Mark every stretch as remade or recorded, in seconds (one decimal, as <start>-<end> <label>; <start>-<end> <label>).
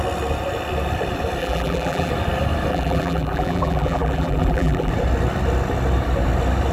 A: 0.0-1.4 recorded; 1.4-2.1 remade; 2.1-2.7 recorded; 2.7-4.9 remade; 4.9-6.7 recorded